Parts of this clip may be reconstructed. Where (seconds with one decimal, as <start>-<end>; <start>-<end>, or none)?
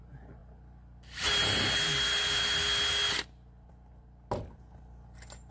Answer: none